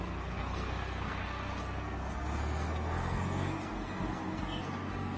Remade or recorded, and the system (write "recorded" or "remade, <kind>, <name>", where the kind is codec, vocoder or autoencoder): remade, codec, SNAC